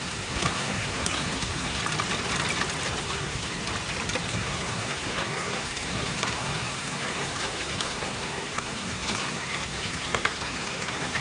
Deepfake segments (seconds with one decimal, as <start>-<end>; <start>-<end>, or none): 0.0-1.8; 3.0-3.6; 4.3-11.2